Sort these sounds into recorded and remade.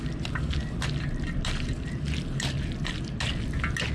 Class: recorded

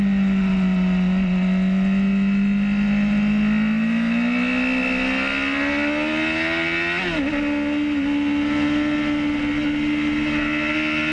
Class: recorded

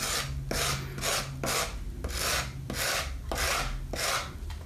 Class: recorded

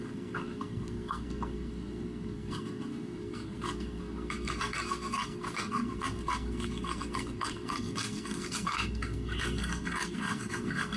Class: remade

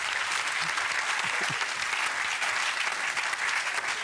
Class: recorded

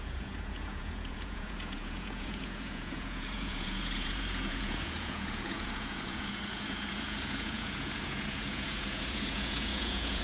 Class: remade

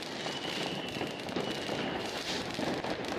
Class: recorded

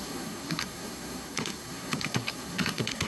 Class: remade